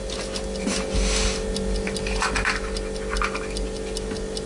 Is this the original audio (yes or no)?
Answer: yes